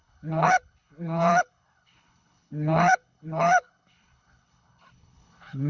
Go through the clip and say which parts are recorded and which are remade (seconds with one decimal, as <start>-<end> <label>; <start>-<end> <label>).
0.0-5.7 remade

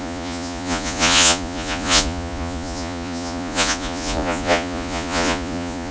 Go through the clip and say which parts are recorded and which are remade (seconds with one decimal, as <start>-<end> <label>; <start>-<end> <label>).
0.0-5.9 remade

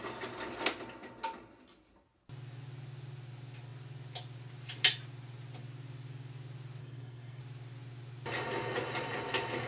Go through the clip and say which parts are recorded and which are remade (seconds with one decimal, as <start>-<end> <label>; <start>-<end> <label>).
0.0-6.8 recorded; 6.8-7.4 remade; 7.4-9.7 recorded

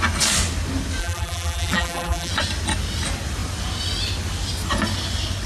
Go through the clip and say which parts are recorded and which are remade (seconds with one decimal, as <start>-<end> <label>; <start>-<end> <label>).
0.0-1.0 recorded; 1.0-2.3 remade; 2.3-5.5 recorded

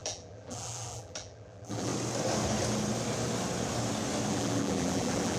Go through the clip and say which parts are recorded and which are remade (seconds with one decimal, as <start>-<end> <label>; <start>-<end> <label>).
0.0-1.9 remade; 1.9-4.3 recorded; 4.3-5.4 remade

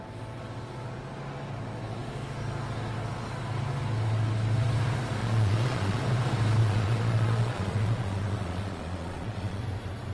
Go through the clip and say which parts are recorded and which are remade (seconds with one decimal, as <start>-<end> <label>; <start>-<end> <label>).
0.0-5.2 recorded; 5.2-6.0 remade; 6.0-6.6 recorded; 6.6-9.6 remade; 9.6-10.1 recorded

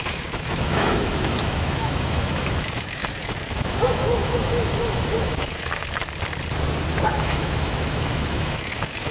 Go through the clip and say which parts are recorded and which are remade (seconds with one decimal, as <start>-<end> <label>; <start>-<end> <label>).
0.0-6.0 remade; 6.0-7.2 recorded; 7.2-9.1 remade